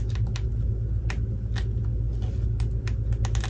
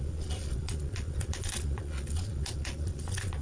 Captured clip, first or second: first